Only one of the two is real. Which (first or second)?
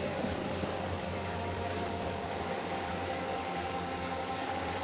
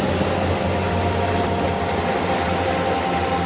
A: second